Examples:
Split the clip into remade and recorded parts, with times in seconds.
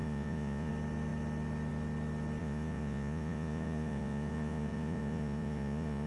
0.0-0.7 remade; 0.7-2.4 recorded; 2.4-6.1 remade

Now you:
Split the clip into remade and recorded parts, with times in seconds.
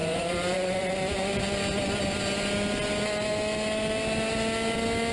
0.0-0.9 remade; 0.9-5.1 recorded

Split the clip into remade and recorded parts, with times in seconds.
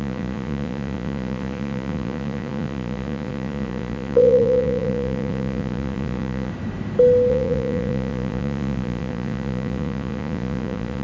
0.0-6.5 remade; 6.5-7.3 recorded; 7.3-11.0 remade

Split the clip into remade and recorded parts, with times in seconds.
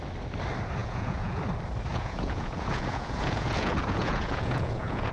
0.0-0.8 recorded; 0.8-1.4 remade; 1.4-1.9 recorded; 1.9-5.1 remade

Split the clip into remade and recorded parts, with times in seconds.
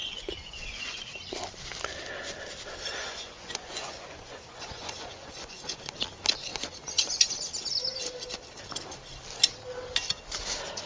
0.0-1.1 remade; 1.1-3.0 recorded; 3.0-5.8 remade; 5.8-6.5 recorded; 6.5-7.3 remade; 7.3-10.9 recorded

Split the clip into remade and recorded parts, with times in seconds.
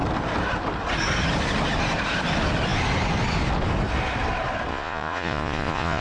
0.0-4.7 recorded; 4.7-6.0 remade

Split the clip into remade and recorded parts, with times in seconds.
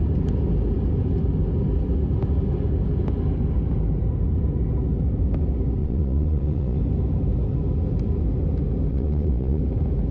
0.0-5.8 recorded; 5.8-6.8 remade; 6.8-8.9 recorded; 8.9-9.6 remade; 9.6-10.1 recorded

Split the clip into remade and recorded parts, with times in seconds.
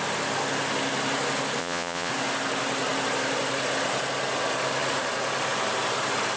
0.0-1.6 recorded; 1.6-2.1 remade; 2.1-6.4 recorded